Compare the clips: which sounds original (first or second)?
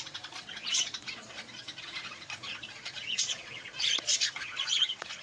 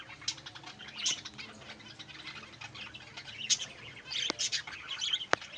second